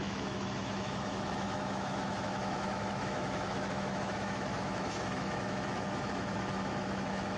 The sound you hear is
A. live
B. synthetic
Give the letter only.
B